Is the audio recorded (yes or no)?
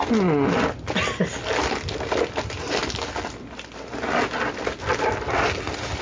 yes